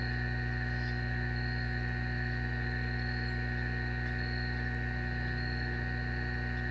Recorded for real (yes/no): yes